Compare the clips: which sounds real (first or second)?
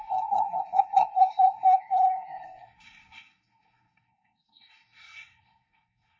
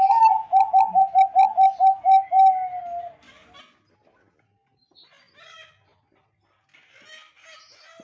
second